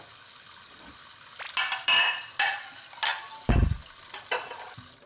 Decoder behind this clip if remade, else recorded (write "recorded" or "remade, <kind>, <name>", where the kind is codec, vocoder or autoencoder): recorded